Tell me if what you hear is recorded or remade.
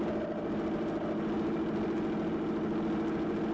recorded